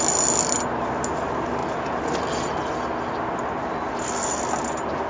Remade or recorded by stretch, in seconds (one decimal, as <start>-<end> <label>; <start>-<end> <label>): 0.0-5.1 recorded